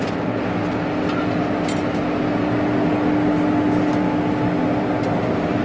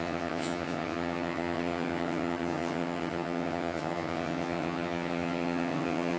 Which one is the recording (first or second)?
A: first